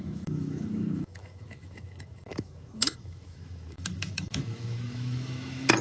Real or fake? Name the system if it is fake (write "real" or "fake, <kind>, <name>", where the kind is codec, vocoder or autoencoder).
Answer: fake, autoencoder, DAC-VAE